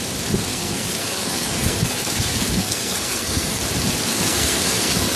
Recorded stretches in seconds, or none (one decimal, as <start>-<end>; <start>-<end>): 0.0-0.5; 3.6-4.1